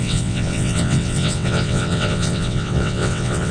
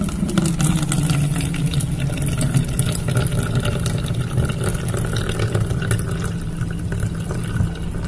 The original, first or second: second